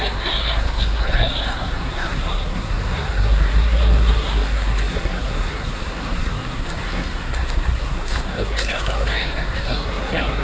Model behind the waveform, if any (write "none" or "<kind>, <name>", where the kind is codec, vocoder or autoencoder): codec, SNAC